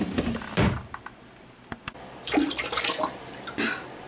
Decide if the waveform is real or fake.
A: real